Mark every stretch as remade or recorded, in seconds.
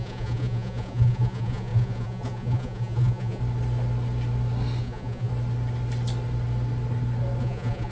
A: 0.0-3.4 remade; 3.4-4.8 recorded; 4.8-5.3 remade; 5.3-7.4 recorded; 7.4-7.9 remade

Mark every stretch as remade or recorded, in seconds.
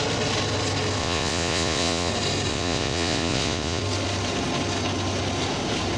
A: 0.0-1.0 recorded; 1.0-2.1 remade; 2.1-2.5 recorded; 2.5-3.8 remade; 3.8-6.0 recorded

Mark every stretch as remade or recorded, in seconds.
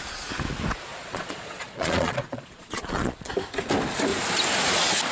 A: 0.0-0.9 recorded; 0.9-3.3 remade; 3.3-5.1 recorded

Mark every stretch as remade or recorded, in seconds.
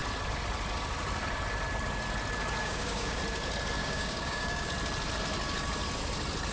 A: 0.0-2.6 recorded; 2.6-3.2 remade; 3.2-3.8 recorded; 3.8-4.7 remade; 4.7-6.5 recorded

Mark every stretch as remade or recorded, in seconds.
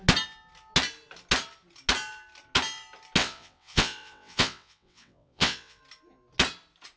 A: 0.0-3.2 recorded; 3.2-5.8 remade; 5.8-7.0 recorded